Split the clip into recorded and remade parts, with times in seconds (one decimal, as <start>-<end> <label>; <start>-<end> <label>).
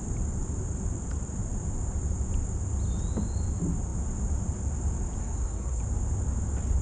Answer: 0.0-5.2 recorded; 5.2-5.8 remade; 5.8-6.8 recorded